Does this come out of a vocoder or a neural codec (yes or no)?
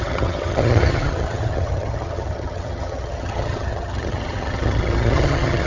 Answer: yes